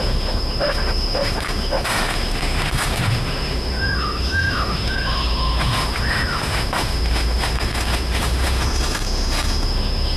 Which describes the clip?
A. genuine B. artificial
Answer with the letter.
B